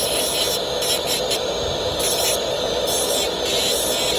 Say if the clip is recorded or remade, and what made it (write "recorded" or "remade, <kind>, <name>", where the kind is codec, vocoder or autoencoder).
recorded